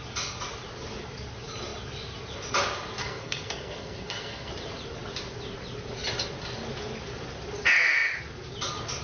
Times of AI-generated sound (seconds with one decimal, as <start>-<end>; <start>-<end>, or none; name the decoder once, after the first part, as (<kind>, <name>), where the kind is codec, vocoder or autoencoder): 3.0-4.5 (codec, SNAC)